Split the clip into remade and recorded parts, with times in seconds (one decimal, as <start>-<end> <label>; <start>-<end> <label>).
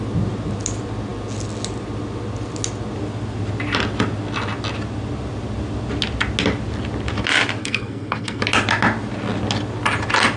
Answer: 0.0-7.6 recorded; 7.6-8.4 remade; 8.4-10.4 recorded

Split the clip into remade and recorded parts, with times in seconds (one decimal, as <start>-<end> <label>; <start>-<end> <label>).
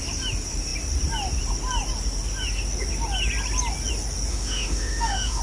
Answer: 0.0-4.3 recorded; 4.3-5.4 remade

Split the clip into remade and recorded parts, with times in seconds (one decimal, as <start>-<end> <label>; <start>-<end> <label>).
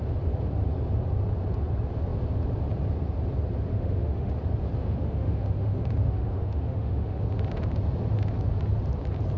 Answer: 0.0-3.7 recorded; 3.7-4.3 remade; 4.3-4.8 recorded; 4.8-7.2 remade; 7.2-9.4 recorded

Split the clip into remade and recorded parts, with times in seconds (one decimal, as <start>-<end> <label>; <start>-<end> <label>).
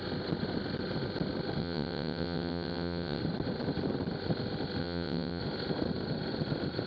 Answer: 0.0-1.6 recorded; 1.6-3.2 remade; 3.2-4.8 recorded; 4.8-5.4 remade; 5.4-6.9 recorded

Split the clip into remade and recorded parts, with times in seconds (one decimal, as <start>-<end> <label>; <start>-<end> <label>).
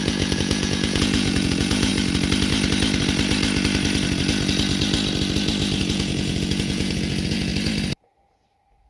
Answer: 0.0-1.9 remade; 1.9-5.8 recorded; 5.8-7.5 remade; 7.5-8.9 recorded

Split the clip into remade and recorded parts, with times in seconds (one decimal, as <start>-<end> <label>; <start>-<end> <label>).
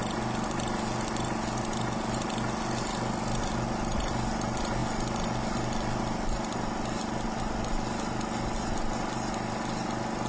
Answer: 0.0-10.3 recorded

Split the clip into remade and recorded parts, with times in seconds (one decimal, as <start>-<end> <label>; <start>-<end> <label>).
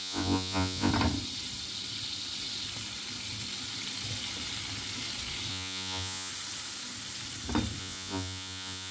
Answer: 0.0-0.9 remade; 0.9-5.5 recorded; 5.5-6.3 remade; 6.3-7.8 recorded; 7.8-8.9 remade